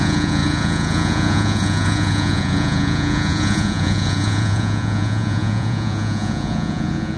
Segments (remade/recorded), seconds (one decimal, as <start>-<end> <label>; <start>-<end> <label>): 0.0-7.2 remade

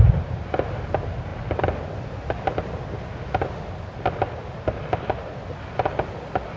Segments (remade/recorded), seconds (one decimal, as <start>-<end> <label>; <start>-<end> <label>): 0.0-6.6 recorded

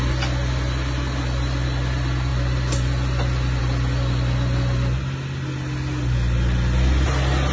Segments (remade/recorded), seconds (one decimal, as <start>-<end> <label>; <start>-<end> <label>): 0.0-7.5 recorded